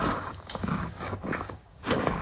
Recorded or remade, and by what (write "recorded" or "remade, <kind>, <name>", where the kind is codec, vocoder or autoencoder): remade, codec, DAC